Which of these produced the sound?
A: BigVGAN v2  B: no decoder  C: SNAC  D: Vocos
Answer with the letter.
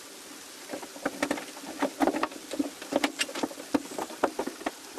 B